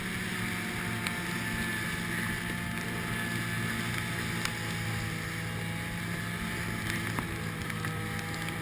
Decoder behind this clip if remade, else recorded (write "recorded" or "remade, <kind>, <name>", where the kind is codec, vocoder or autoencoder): recorded